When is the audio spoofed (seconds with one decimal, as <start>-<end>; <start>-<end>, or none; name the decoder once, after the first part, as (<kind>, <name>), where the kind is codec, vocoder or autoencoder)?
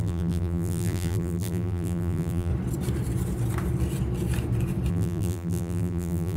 0.0-2.5 (vocoder, BigVGAN v2); 4.9-6.4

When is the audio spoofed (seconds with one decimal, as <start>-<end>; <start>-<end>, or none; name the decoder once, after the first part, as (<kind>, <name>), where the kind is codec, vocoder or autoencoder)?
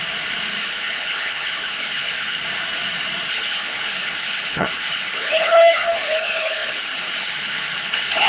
0.6-2.4 (codec, HILCodec); 3.3-8.3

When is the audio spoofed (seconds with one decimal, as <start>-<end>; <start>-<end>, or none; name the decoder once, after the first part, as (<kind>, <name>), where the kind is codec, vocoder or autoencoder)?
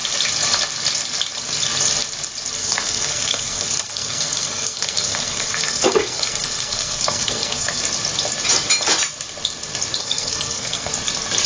2.6-7.8 (codec, SNAC); 10.0-10.9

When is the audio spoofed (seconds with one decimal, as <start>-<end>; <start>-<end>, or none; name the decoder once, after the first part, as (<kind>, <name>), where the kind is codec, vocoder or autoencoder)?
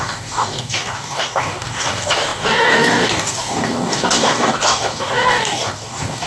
0.0-6.3 (codec, DAC)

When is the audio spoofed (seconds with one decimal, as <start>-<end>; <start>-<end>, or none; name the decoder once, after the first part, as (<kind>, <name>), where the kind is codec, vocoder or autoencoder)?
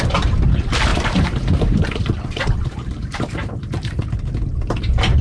0.9-4.0 (vocoder, BigVGAN v2)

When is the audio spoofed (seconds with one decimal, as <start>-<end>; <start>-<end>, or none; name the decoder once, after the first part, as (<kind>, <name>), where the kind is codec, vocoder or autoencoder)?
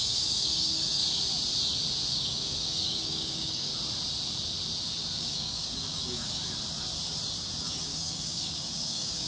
0.0-1.0 (codec, DAC); 2.1-3.7; 5.2-6.4; 7.6-9.3